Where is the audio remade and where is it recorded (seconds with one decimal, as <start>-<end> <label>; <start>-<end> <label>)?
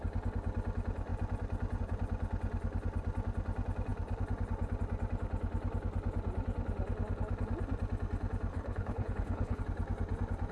0.0-8.5 recorded; 8.5-9.6 remade; 9.6-10.5 recorded